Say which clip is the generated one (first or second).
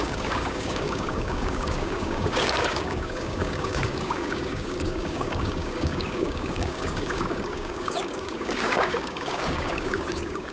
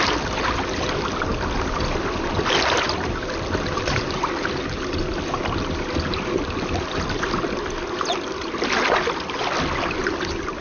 first